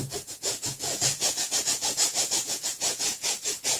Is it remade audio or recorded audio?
remade